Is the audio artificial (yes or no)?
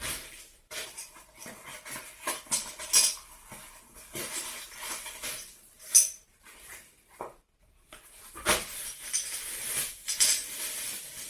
no